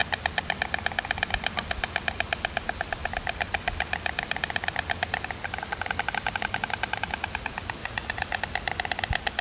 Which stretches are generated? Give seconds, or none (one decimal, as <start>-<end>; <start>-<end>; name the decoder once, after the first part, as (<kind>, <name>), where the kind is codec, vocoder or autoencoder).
7.8-8.4 (vocoder, Vocos)